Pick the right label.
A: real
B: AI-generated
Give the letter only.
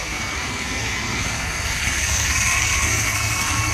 B